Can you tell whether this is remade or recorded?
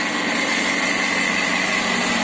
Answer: recorded